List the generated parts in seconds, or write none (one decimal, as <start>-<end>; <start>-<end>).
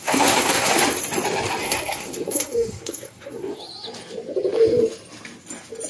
0.0-0.8; 1.6-3.6